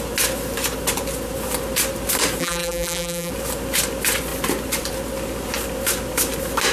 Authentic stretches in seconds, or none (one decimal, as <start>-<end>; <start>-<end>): 0.0-2.4; 3.3-6.7